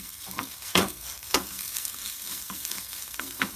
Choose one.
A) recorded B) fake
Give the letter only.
B